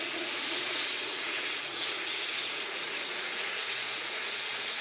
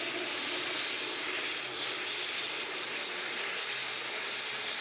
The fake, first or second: first